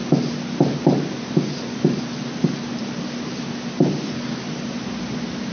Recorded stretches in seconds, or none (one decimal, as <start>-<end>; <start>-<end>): 0.0-5.5